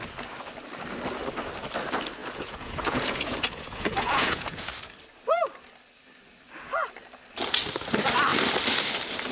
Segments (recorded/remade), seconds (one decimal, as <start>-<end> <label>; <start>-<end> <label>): 0.0-2.2 recorded; 2.2-4.7 remade; 4.7-9.3 recorded